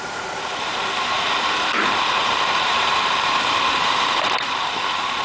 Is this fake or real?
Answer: fake